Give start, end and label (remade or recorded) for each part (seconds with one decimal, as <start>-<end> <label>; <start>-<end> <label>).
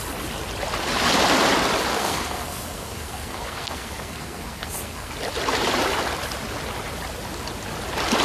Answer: 0.0-1.9 recorded; 1.9-5.1 remade; 5.1-8.2 recorded